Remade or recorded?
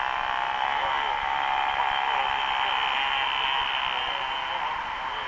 recorded